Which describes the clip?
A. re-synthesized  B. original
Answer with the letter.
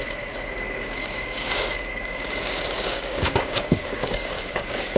A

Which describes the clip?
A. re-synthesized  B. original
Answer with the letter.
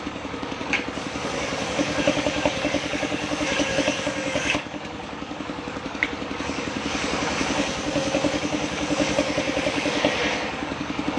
A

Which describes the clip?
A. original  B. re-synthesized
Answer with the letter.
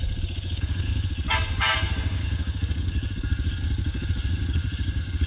B